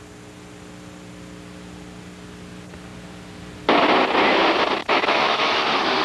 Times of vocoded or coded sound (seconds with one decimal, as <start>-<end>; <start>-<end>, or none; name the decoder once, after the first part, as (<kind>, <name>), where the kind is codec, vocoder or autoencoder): 4.8-5.6 (autoencoder, DAC-VAE)